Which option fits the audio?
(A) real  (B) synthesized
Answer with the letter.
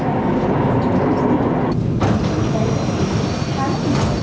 A